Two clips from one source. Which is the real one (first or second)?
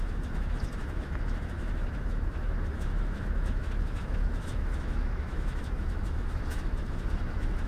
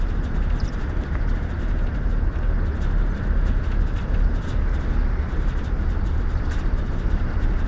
second